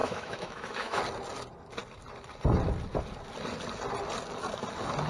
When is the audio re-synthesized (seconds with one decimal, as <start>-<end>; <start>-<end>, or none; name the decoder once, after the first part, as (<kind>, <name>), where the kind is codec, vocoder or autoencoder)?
0.0-1.0 (autoencoder, DAC-VAE)